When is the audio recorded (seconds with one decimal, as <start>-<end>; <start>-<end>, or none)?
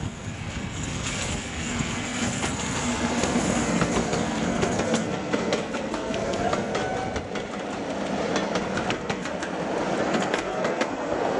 6.7-8.9; 9.3-10.0